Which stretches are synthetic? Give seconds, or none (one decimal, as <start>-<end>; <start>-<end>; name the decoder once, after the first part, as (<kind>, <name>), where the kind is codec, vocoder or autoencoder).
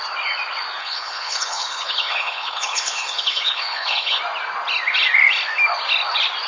0.8-4.2 (codec, HILCodec)